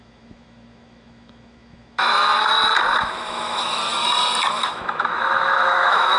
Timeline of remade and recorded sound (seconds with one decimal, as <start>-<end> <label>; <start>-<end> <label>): 0.0-2.3 remade; 2.3-3.0 recorded; 3.0-3.9 remade; 3.9-4.5 recorded; 4.5-6.2 remade